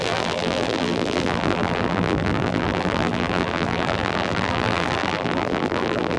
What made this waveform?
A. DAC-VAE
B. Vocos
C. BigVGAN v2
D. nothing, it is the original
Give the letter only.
C